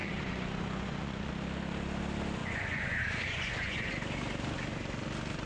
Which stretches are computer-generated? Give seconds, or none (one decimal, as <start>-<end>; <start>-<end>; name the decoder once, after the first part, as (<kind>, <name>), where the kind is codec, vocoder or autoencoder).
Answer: 0.0-1.3 (vocoder, Vocos); 2.4-3.9